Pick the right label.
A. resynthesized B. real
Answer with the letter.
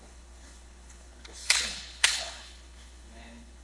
A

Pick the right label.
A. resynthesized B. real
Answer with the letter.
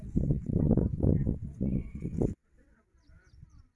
A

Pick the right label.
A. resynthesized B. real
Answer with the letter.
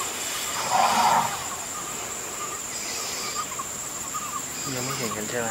B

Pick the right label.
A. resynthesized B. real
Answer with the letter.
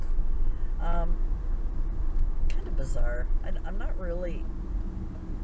B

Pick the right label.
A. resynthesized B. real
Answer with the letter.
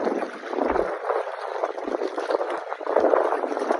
B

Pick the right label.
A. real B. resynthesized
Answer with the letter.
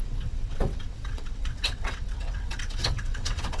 B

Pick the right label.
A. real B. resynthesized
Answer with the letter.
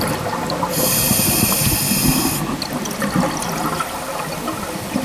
A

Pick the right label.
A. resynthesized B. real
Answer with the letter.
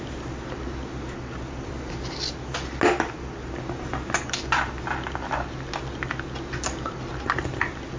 B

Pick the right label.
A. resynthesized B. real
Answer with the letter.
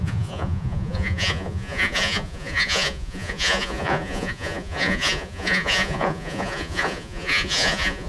A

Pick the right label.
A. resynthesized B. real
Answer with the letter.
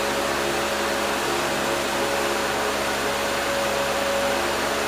A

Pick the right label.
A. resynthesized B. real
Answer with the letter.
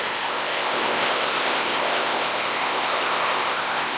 A